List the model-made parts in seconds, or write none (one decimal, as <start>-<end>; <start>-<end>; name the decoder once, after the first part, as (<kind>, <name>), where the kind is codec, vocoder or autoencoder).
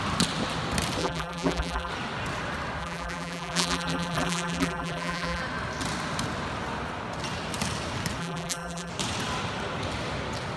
1.0-1.9 (vocoder, BigVGAN v2); 2.8-5.4; 8.2-8.9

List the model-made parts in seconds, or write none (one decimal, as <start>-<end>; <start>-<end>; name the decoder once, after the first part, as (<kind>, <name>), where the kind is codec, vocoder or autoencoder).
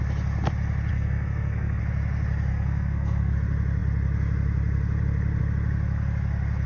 0.9-1.8 (codec, SNAC); 2.5-3.3